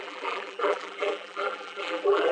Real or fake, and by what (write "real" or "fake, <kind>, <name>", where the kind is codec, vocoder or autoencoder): fake, vocoder, BigVGAN v2